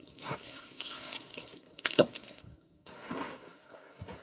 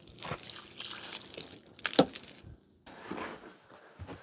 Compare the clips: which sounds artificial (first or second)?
first